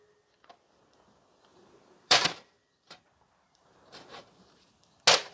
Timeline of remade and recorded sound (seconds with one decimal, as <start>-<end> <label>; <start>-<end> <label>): 0.0-1.5 recorded; 1.5-4.7 remade; 4.7-5.3 recorded